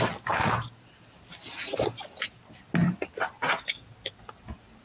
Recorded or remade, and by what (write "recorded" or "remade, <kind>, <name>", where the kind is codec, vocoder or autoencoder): recorded